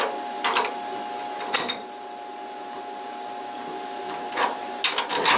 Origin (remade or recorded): recorded